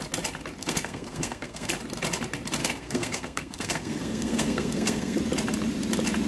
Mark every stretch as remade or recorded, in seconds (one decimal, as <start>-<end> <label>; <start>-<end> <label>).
0.0-0.6 recorded; 0.6-1.7 remade; 1.7-2.6 recorded; 2.6-5.2 remade; 5.2-6.3 recorded